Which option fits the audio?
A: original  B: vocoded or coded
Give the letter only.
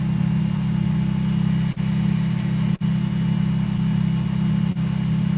A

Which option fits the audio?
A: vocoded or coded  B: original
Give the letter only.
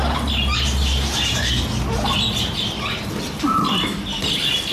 B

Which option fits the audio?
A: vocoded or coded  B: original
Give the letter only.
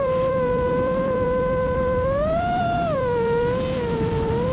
A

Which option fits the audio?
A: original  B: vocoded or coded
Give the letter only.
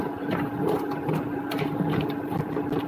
B